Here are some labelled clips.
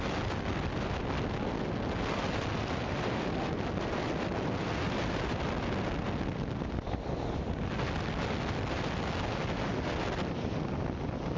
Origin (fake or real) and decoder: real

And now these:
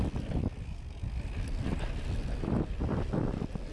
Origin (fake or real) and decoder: real